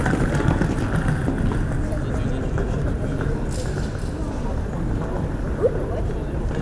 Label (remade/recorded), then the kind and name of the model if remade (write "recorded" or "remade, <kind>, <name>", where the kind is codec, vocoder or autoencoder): recorded